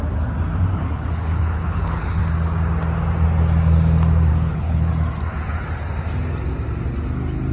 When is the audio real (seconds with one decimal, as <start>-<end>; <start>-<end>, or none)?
0.0-0.7; 2.2-4.3; 4.9-7.5